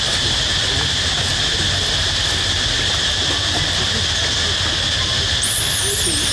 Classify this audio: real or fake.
real